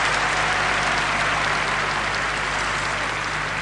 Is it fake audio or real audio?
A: real